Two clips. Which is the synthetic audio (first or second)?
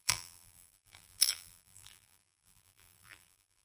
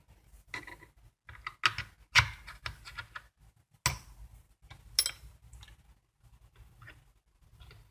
first